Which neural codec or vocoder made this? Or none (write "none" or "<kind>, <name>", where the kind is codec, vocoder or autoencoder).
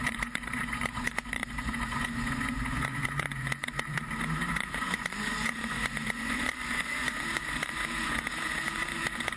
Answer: vocoder, Vocos